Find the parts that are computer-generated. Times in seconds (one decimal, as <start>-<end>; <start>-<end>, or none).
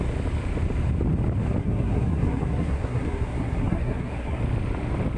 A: 1.6-4.4